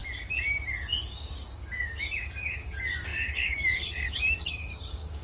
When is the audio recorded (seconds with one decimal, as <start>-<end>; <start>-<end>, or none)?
0.0-1.1